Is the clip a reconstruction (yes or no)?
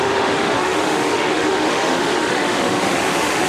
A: yes